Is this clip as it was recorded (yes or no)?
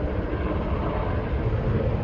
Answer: yes